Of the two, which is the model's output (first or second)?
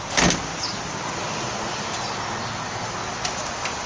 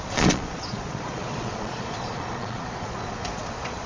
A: second